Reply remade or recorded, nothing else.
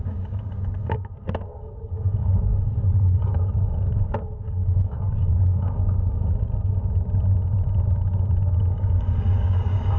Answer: remade